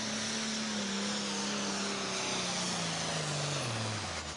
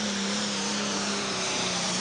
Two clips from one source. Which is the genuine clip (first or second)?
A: first